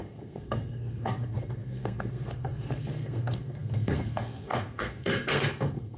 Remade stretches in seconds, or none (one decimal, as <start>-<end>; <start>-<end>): 0.0-6.0